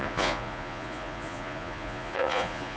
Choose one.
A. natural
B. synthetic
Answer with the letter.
B